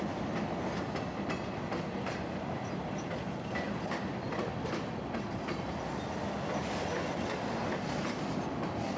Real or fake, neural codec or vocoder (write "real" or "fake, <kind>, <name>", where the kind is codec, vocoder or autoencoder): real